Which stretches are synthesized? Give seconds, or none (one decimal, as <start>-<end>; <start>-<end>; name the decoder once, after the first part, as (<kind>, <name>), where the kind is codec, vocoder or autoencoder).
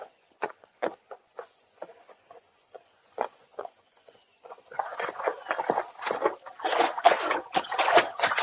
0.0-5.3 (vocoder, Vocos); 6.6-8.4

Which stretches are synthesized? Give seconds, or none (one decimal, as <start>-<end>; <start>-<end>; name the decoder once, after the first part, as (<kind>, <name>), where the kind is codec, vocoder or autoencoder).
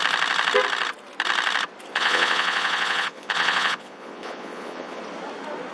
1.9-5.0 (vocoder, Vocos)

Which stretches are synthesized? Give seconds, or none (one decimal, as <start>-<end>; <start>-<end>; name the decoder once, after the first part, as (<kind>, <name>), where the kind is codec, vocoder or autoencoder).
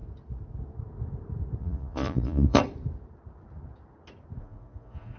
1.6-2.6 (vocoder, Vocos); 4.4-5.2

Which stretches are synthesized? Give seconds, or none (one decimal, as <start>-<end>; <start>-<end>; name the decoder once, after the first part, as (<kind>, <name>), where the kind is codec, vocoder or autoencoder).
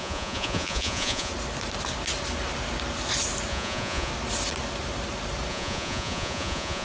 0.0-1.3 (vocoder, Vocos); 3.5-4.1; 5.5-6.8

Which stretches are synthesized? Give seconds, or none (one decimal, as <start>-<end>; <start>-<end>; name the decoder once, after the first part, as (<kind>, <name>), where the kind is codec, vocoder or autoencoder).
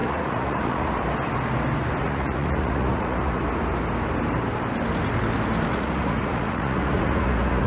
0.0-0.9 (vocoder, Vocos); 2.0-3.4; 5.7-7.7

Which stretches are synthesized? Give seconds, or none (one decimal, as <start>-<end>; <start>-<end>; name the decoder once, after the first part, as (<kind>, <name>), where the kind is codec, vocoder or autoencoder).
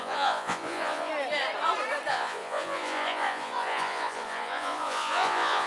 0.0-1.1 (vocoder, Vocos); 2.1-5.7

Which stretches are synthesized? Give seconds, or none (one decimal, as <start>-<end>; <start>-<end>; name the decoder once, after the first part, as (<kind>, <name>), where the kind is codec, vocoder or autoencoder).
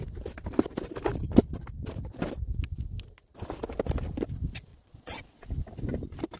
4.7-5.5 (vocoder, Vocos)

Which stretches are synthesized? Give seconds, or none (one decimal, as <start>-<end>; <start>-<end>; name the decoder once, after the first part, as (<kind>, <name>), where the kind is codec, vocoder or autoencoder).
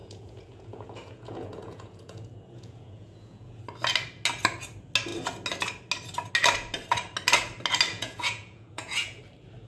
0.0-3.6 (vocoder, Vocos); 7.9-9.2